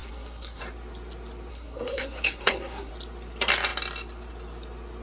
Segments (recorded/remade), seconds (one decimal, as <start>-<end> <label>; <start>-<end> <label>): 0.0-0.6 remade; 0.6-1.5 recorded; 1.5-2.9 remade; 2.9-5.0 recorded